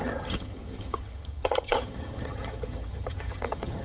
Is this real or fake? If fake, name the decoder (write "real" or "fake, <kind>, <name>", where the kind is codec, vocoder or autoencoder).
fake, vocoder, HiFi-GAN